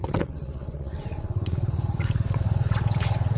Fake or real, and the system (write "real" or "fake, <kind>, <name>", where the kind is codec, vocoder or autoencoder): fake, vocoder, WaveNeXt